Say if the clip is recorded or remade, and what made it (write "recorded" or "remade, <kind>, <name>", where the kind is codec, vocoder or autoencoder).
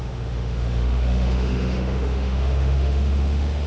remade, autoencoder, DAC-VAE